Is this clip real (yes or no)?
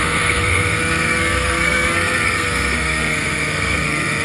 no